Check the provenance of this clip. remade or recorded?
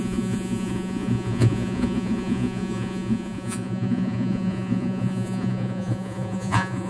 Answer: remade